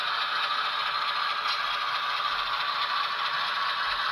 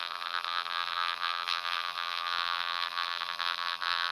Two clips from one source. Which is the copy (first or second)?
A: second